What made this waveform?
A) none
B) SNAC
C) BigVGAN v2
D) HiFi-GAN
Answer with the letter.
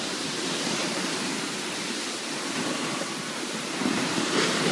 C